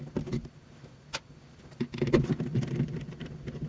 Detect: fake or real fake